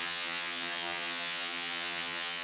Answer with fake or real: fake